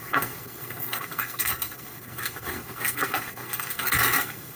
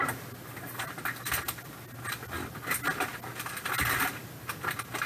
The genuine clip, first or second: second